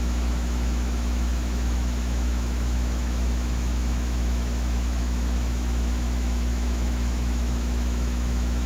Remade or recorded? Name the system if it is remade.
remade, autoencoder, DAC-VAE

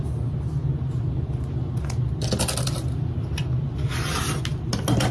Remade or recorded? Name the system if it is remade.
recorded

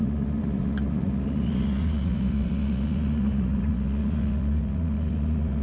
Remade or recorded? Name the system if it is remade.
remade, vocoder, Vocos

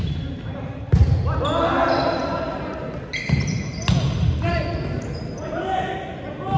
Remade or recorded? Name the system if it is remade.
recorded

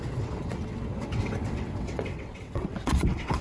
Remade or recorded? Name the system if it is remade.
remade, vocoder, WaveNeXt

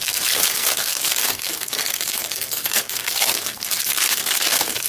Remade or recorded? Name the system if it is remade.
remade, codec, SNAC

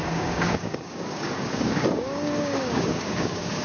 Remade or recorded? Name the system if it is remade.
remade, codec, DAC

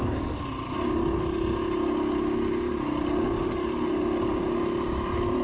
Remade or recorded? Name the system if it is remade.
recorded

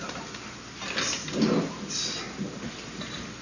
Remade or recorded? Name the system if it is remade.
recorded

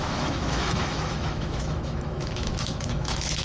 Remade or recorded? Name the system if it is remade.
remade, autoencoder, DAC-VAE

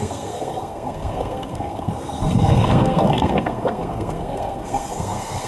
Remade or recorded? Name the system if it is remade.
remade, codec, SNAC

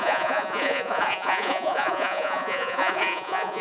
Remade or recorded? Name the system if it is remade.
remade, vocoder, Vocos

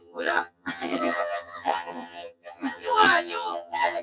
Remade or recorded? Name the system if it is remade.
remade, vocoder, HiFi-GAN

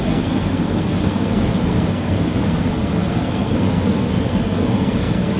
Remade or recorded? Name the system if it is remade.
remade, codec, SNAC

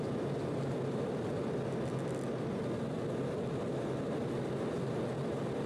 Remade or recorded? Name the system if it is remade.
recorded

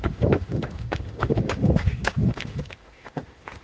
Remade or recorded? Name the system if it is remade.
remade, autoencoder, DAC-VAE